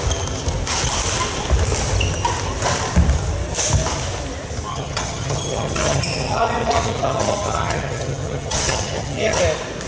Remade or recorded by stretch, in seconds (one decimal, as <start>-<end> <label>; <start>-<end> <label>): 0.0-4.7 recorded; 4.7-9.4 remade; 9.4-9.9 recorded